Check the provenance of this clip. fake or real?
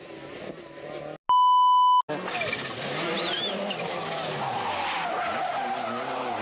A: real